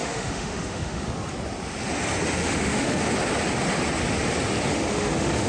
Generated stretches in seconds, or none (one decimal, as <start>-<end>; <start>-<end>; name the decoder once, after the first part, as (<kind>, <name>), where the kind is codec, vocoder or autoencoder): 0.0-1.1 (autoencoder, DAC-VAE); 2.4-3.1; 4.7-5.5